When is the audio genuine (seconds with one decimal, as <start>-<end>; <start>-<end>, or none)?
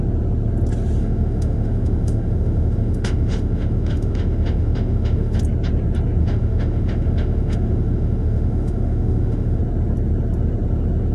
0.0-1.0; 5.4-6.2; 9.6-11.1